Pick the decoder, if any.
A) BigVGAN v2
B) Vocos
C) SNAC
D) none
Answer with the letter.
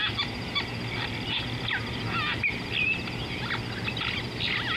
D